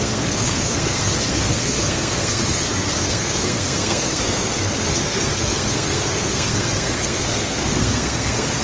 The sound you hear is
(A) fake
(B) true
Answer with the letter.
A